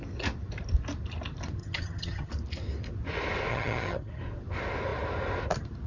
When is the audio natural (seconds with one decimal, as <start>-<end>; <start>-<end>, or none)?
0.0-1.6; 2.3-3.5; 4.2-5.9